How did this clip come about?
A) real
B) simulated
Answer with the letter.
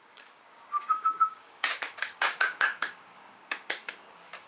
B